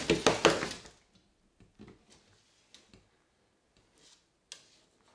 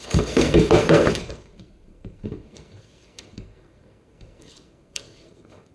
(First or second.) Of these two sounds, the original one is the first